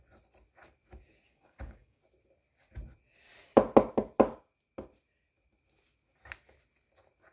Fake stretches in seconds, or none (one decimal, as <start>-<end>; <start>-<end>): 1.3-2.0